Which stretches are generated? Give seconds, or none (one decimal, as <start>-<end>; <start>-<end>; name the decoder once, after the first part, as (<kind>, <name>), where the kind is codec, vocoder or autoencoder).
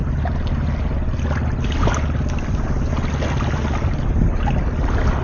none